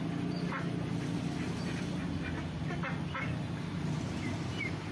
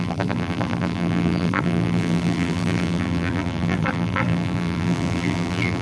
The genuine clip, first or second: first